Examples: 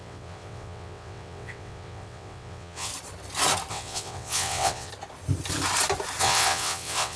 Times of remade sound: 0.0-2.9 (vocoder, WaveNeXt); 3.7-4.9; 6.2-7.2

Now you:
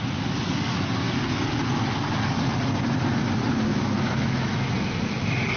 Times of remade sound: 3.7-4.7 (autoencoder, DAC-VAE)

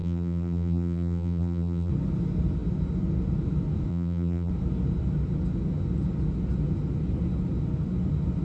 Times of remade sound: 0.0-1.9 (vocoder, BigVGAN v2); 3.9-4.5

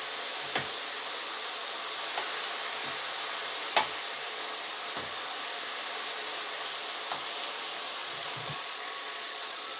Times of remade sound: 8.0-9.8 (vocoder, Vocos)

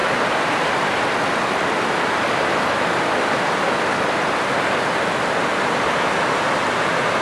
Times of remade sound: none

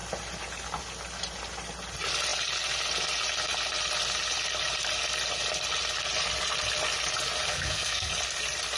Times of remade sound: 7.5-8.1 (codec, SNAC)

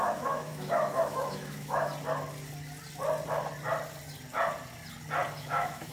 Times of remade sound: 0.0-1.9 (autoencoder, DAC-VAE); 5.4-5.9